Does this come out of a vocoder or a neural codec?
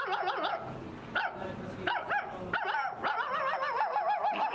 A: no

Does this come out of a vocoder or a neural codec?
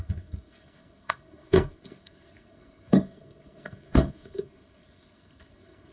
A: yes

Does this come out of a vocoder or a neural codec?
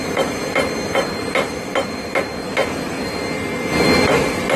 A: no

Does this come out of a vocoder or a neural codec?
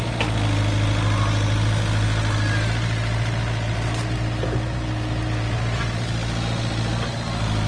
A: no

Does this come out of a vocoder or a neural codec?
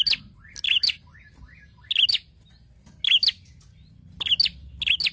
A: no